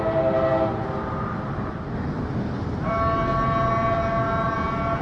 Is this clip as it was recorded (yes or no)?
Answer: yes